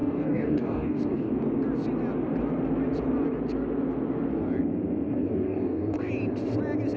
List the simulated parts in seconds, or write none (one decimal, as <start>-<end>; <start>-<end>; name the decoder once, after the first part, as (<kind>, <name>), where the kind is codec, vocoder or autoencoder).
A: 0.0-1.3 (codec, DAC); 5.1-6.1